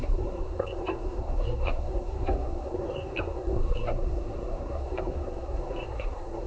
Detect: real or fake fake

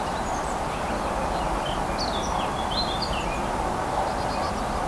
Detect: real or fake real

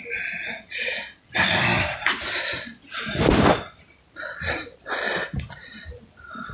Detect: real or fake real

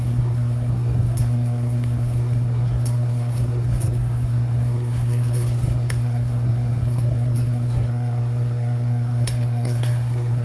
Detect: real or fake fake